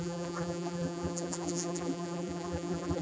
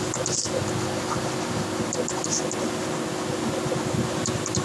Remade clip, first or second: first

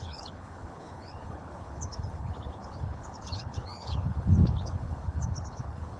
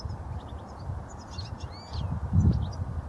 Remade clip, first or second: first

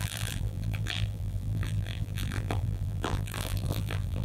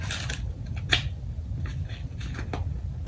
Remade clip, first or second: first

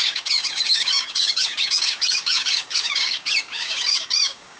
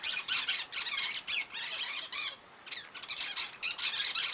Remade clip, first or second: first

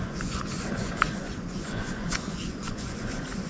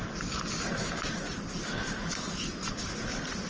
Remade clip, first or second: first